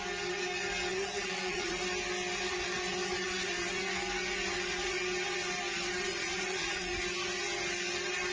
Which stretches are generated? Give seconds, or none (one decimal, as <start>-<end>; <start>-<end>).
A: 0.9-1.8; 6.1-7.0